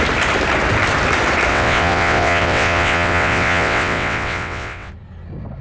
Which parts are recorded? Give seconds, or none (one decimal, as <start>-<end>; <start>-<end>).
0.0-1.5; 4.9-5.6